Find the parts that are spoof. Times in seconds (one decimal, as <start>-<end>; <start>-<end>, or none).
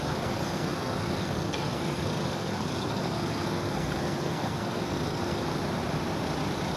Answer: 0.0-5.5